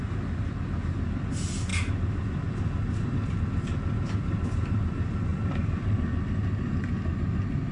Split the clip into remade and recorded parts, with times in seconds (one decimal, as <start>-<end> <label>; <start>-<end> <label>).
0.0-7.7 recorded